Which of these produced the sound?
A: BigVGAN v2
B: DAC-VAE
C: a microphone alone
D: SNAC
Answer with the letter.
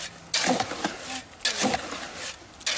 C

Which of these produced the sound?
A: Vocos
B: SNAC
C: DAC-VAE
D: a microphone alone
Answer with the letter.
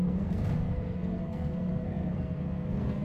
B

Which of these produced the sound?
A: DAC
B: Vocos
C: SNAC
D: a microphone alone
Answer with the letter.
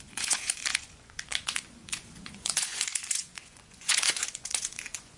B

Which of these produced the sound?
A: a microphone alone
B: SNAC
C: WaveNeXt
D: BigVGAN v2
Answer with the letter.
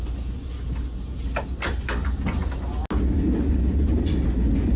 A